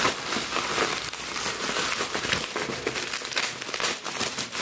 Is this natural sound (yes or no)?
yes